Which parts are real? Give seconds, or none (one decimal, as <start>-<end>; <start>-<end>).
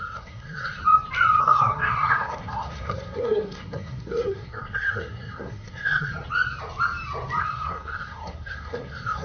0.8-1.4; 6.1-7.4